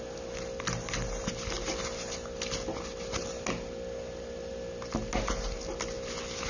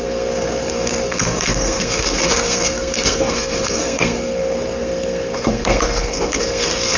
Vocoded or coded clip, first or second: second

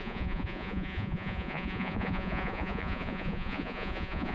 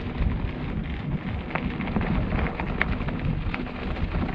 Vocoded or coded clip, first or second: first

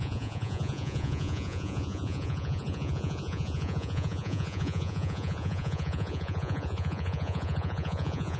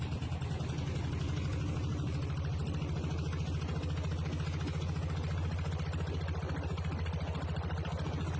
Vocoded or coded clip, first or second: first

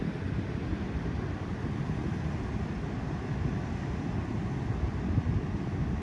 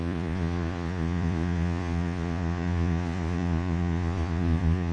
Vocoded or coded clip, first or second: second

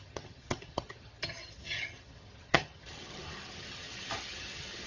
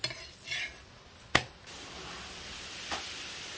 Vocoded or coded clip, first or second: first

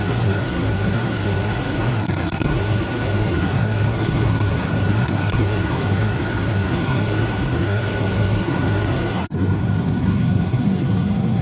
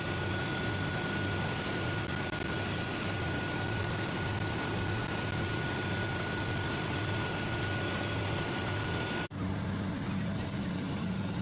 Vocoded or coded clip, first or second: first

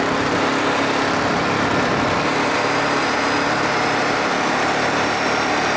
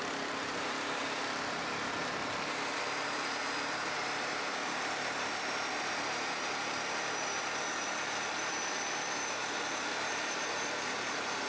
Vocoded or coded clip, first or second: second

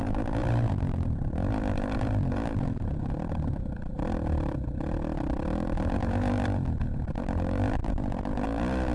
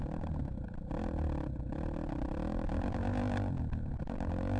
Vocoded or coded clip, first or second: first